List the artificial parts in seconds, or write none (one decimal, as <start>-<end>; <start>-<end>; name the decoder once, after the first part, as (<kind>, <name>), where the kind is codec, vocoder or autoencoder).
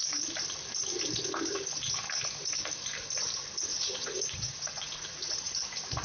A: 3.7-5.5 (vocoder, Vocos)